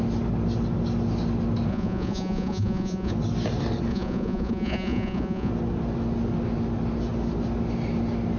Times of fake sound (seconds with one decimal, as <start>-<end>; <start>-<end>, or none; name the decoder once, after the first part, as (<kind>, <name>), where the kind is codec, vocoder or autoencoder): 1.7-3.1 (vocoder, Vocos); 3.9-5.5